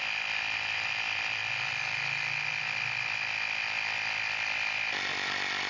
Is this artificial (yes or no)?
no